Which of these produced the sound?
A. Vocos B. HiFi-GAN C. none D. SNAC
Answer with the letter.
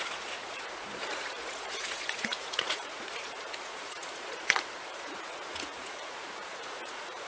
A